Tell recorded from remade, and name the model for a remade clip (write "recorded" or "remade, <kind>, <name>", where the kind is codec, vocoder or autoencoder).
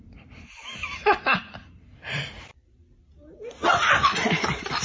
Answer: remade, vocoder, BigVGAN v2